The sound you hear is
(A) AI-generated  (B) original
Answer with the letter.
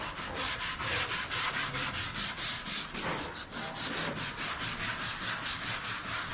B